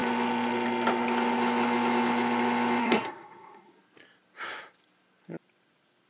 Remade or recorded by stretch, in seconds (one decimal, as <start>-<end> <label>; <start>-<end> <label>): 0.0-2.8 recorded; 2.8-3.7 remade; 3.7-6.1 recorded